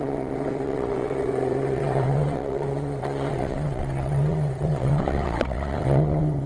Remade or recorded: remade